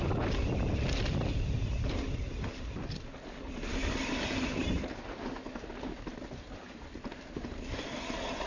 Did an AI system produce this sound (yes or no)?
no